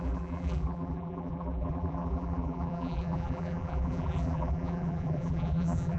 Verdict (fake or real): fake